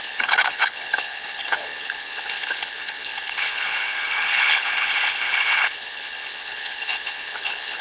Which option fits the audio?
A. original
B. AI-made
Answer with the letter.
B